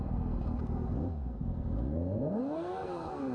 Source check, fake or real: fake